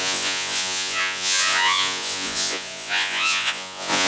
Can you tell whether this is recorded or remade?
remade